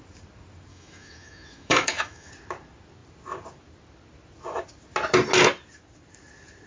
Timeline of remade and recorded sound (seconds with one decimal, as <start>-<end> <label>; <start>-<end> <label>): 0.0-0.7 recorded; 0.7-2.3 remade; 2.3-6.7 recorded